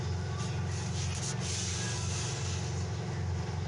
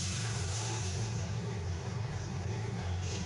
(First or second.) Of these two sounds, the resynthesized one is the second